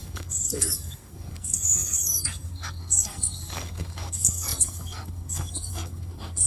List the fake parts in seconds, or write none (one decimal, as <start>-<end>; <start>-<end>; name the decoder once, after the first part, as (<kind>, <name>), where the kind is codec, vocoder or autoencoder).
0.0-6.5 (codec, SNAC)